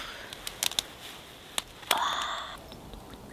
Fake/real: real